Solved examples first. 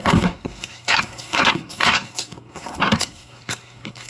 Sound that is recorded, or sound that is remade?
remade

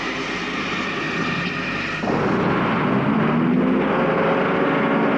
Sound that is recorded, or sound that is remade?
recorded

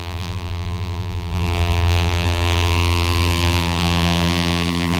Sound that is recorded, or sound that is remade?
remade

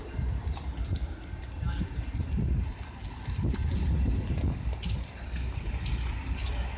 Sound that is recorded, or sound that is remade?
recorded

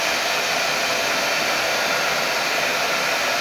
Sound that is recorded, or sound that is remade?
recorded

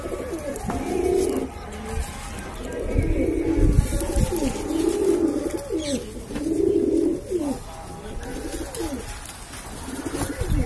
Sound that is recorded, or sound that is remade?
recorded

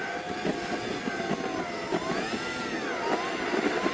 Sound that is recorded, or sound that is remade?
recorded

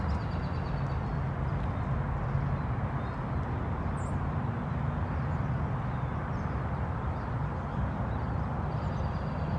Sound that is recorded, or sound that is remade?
recorded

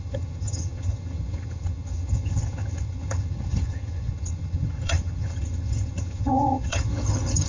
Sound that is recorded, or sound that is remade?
remade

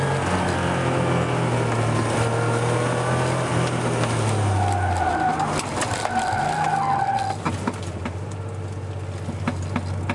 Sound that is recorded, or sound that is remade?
recorded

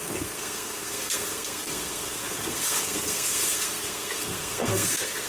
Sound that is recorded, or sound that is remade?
remade